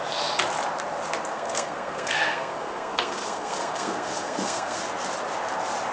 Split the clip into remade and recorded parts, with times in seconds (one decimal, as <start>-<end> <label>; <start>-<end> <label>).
0.0-1.3 recorded; 1.3-4.8 remade; 4.8-5.9 recorded